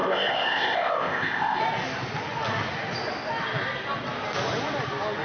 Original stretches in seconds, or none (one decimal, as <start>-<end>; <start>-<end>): 1.6-5.2